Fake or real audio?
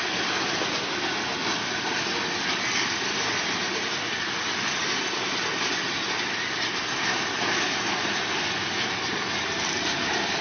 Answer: real